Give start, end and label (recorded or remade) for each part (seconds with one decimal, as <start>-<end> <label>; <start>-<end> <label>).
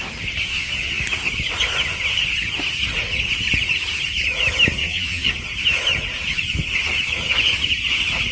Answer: 0.0-0.5 recorded; 0.5-1.0 remade; 1.0-4.8 recorded; 4.8-5.3 remade; 5.3-8.3 recorded